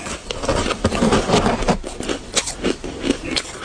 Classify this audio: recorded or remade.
recorded